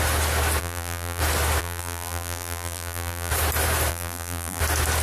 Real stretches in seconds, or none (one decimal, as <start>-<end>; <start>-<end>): 0.0-0.6; 1.2-1.6; 3.3-3.9; 4.6-5.0